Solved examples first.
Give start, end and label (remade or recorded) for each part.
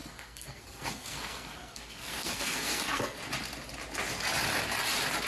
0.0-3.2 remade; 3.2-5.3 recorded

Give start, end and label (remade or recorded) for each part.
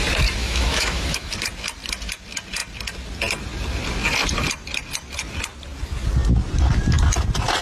0.0-0.4 recorded; 0.4-1.3 remade; 1.3-7.6 recorded